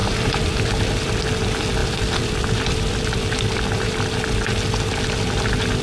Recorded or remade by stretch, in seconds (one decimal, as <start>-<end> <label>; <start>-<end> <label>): 0.0-1.1 remade; 1.1-1.8 recorded; 1.8-2.9 remade; 2.9-5.8 recorded